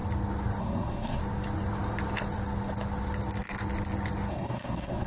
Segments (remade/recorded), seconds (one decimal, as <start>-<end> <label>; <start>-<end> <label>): 0.0-0.6 recorded; 0.6-1.2 remade; 1.2-4.3 recorded; 4.3-5.1 remade